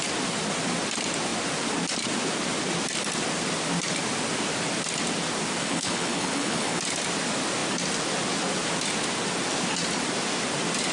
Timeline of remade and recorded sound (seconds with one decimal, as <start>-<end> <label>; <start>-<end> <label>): 0.0-5.6 recorded; 5.6-6.8 remade; 6.8-10.9 recorded